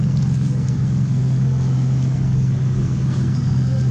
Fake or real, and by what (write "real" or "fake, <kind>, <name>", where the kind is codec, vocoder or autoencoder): fake, codec, SNAC